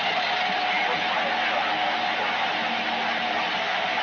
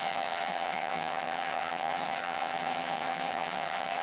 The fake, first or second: second